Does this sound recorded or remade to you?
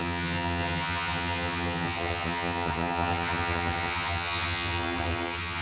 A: remade